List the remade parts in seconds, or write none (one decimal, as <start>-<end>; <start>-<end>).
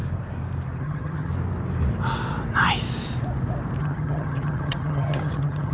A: 0.8-1.3; 3.8-5.7